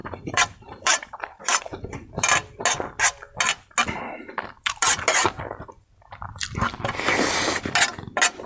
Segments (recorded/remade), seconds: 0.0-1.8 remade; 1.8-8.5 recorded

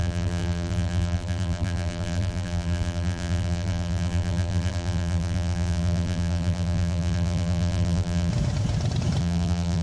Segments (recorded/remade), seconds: 0.0-8.3 remade; 8.3-9.2 recorded; 9.2-9.8 remade

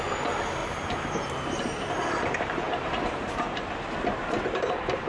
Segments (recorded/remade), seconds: 0.0-0.6 recorded; 0.6-3.7 remade; 3.7-5.1 recorded

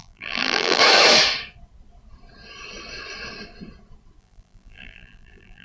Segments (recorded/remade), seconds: 0.0-0.8 remade; 0.8-4.2 recorded; 4.2-5.6 remade

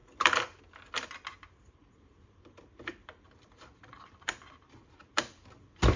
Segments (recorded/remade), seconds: 0.0-0.6 remade; 0.6-1.8 recorded; 1.8-5.4 remade; 5.4-6.0 recorded